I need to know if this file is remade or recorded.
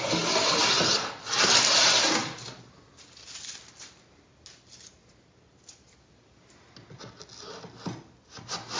recorded